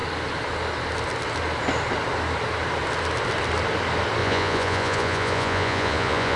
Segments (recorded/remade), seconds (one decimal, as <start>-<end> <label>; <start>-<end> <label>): 0.0-4.2 recorded; 4.2-6.4 remade